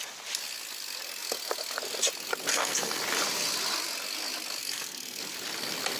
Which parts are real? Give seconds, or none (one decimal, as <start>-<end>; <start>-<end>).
0.0-2.5; 3.0-4.6; 5.2-6.0